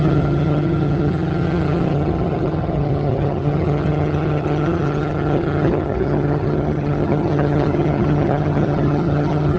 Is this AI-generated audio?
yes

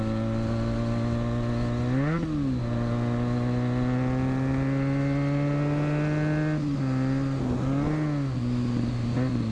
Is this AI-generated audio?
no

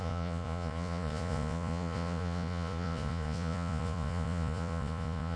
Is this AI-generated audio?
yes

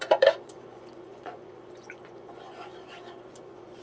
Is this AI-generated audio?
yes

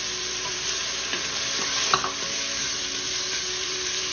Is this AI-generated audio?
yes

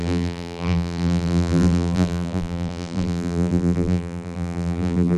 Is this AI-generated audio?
yes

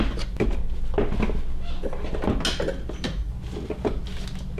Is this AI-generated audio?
no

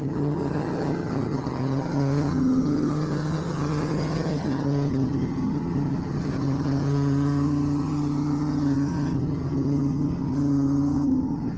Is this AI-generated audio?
yes